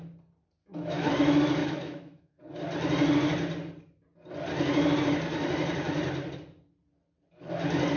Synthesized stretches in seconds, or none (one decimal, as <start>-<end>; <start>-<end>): 0.6-1.1; 1.6-2.4